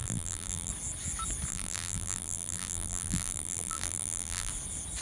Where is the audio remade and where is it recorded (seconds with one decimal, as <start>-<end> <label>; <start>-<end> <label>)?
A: 0.0-0.7 remade; 0.7-1.5 recorded; 1.5-4.5 remade; 4.5-5.0 recorded